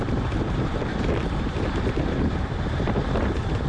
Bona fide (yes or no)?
no